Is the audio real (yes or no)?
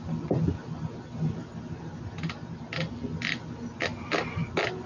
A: yes